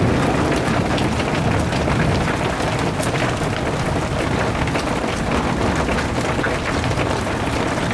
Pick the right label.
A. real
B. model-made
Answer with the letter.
A